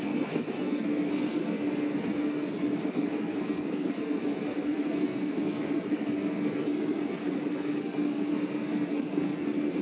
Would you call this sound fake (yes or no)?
yes